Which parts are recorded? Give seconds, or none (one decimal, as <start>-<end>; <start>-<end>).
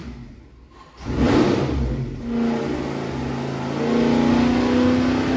0.0-5.4